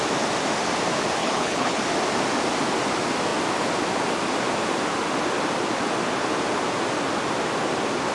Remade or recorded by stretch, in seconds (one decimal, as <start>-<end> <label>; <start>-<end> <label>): 0.0-1.2 recorded; 1.2-1.8 remade; 1.8-8.1 recorded

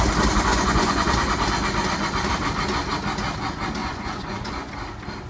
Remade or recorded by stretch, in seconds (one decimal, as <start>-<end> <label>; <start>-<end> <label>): 0.0-0.5 recorded; 0.5-1.1 remade; 1.1-3.8 recorded; 3.8-4.7 remade; 4.7-5.3 recorded

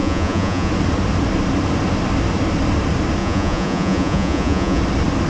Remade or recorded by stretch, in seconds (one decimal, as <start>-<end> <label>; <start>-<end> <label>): 0.0-0.7 remade; 0.7-3.2 recorded; 3.2-4.8 remade; 4.8-5.3 recorded

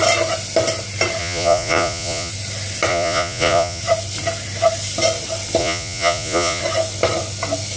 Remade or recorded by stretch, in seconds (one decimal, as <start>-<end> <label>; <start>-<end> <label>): 0.0-1.2 recorded; 1.2-2.3 remade; 2.3-2.9 recorded; 2.9-3.8 remade; 3.8-5.6 recorded; 5.6-6.6 remade; 6.6-7.8 recorded